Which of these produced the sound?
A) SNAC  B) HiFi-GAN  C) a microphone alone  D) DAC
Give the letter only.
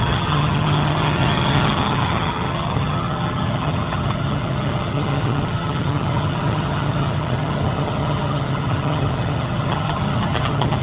B